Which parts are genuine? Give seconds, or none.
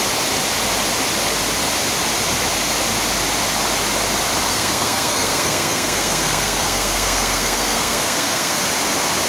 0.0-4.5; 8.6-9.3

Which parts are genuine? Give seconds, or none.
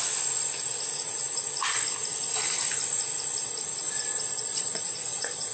0.0-3.8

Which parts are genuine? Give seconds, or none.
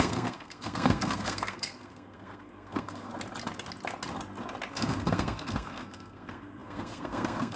3.1-4.7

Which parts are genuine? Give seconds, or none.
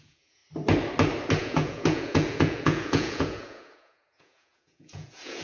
0.4-1.4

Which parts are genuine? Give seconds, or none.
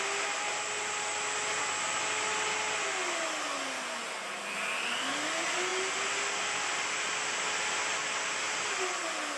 0.0-9.4